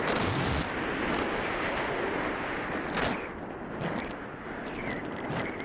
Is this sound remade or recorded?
recorded